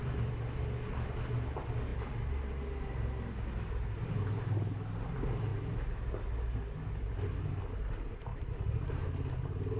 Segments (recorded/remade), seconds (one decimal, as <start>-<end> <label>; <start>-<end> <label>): 0.0-8.3 recorded; 8.3-9.0 remade; 9.0-9.8 recorded

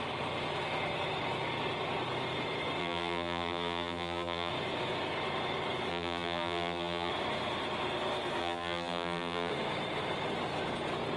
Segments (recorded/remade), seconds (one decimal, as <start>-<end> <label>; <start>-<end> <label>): 0.0-2.8 recorded; 2.8-4.5 remade; 4.5-5.9 recorded; 5.9-7.1 remade; 7.1-8.4 recorded; 8.4-9.5 remade; 9.5-11.2 recorded

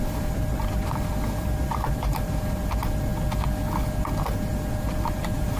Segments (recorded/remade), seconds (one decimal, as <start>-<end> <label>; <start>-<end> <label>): 0.0-3.1 remade; 3.1-4.2 recorded; 4.2-5.6 remade

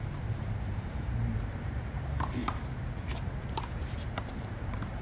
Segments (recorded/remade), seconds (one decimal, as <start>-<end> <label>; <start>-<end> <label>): 0.0-2.4 remade; 2.4-3.7 recorded; 3.7-5.0 remade

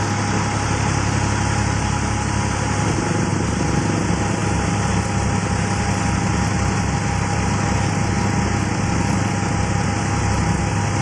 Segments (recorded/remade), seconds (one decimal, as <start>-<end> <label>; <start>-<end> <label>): 0.0-11.0 recorded

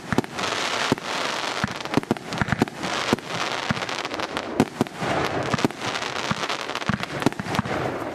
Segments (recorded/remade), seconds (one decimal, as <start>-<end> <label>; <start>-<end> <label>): 0.0-8.1 recorded